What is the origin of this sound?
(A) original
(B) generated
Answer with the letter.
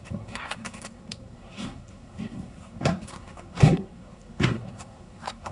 B